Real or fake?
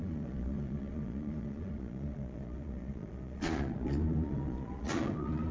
fake